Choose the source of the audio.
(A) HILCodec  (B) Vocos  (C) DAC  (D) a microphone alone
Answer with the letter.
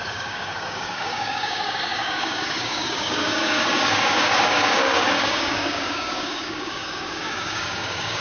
C